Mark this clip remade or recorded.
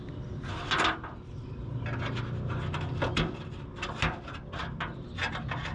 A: recorded